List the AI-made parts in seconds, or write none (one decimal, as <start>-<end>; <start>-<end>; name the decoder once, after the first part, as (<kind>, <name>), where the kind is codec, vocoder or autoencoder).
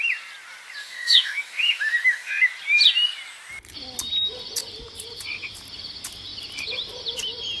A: 0.8-2.3 (autoencoder, DAC-VAE)